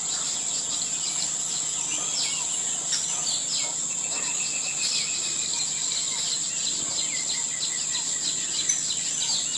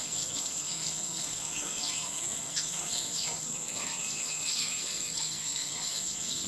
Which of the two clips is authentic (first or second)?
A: first